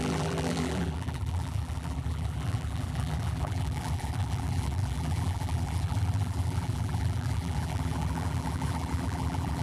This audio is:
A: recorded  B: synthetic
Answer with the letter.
B